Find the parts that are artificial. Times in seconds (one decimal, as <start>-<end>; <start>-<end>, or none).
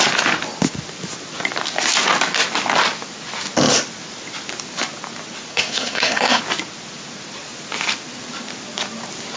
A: 5.5-6.4